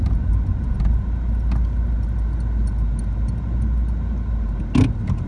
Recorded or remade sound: recorded